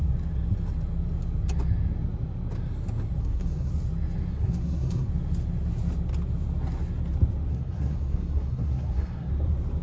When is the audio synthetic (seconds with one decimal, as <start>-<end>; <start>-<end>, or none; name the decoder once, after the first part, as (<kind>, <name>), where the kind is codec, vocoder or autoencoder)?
3.2-3.7 (codec, SNAC); 4.3-5.1; 7.5-9.3